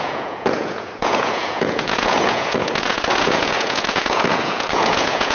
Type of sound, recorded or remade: remade